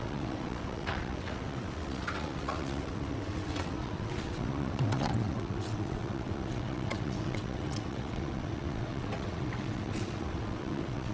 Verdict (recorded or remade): remade